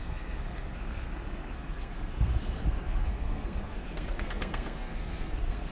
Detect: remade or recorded remade